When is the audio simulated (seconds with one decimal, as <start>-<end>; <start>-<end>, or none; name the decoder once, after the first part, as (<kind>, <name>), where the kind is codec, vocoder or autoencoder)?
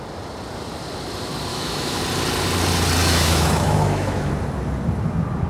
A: 1.5-2.0 (autoencoder, DAC-VAE); 3.0-4.3